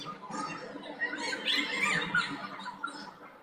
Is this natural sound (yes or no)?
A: yes